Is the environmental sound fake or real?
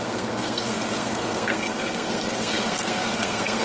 fake